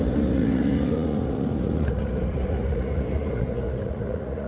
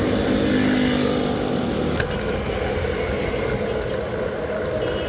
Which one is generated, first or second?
first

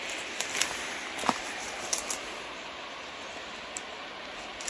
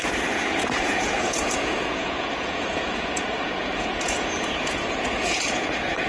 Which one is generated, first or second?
second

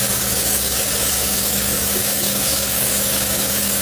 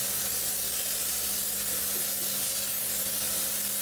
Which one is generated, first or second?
first